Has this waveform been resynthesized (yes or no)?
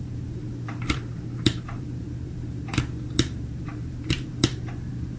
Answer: yes